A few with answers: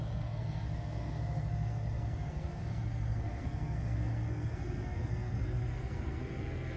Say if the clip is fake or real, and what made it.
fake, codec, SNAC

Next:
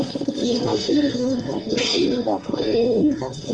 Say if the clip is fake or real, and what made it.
fake, codec, SNAC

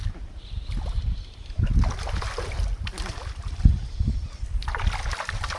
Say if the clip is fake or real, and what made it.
real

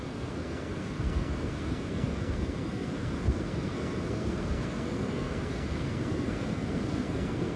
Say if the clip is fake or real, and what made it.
fake, codec, SNAC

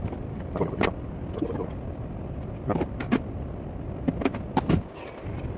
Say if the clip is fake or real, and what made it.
real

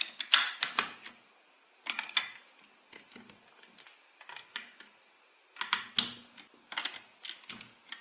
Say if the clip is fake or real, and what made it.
real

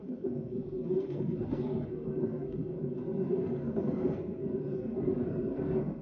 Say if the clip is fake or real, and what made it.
fake, codec, SNAC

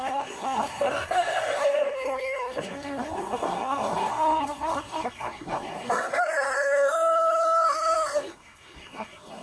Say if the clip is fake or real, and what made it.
fake, codec, SNAC